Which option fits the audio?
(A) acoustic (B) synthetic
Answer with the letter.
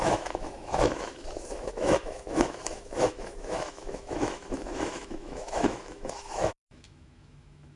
B